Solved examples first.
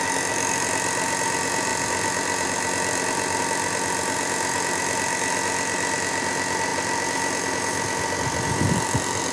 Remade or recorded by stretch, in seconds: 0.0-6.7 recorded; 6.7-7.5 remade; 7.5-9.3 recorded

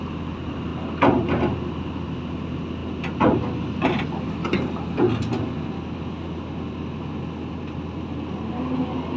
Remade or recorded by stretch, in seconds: 0.0-9.2 recorded

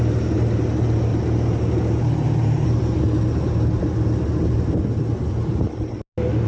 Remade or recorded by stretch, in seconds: 0.0-1.1 recorded; 1.1-3.0 remade; 3.0-6.5 recorded

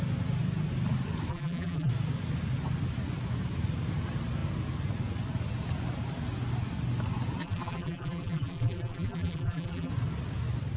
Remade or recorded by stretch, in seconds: 0.0-1.3 recorded; 1.3-1.9 remade; 1.9-7.4 recorded; 7.4-9.9 remade; 9.9-10.8 recorded

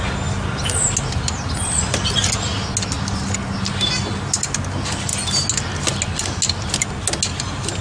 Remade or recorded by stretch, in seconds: 0.0-7.8 recorded

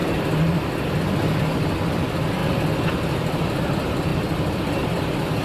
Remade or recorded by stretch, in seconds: 0.0-2.4 remade; 2.4-2.9 recorded; 2.9-5.4 remade

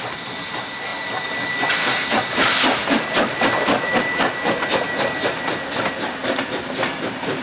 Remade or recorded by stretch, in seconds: 0.0-2.8 recorded; 2.8-4.2 remade; 4.2-6.2 recorded; 6.2-6.7 remade; 6.7-7.4 recorded

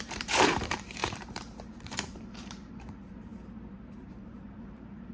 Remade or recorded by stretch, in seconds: 0.0-3.3 remade; 3.3-4.6 recorded; 4.6-5.1 remade